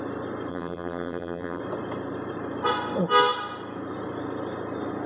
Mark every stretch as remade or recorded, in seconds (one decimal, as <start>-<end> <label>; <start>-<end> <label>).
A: 0.0-0.5 recorded; 0.5-1.6 remade; 1.6-5.1 recorded